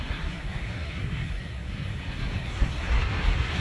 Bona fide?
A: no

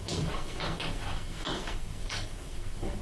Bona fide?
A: no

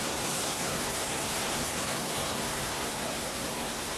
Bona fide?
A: no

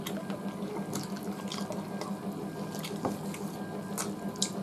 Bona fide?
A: yes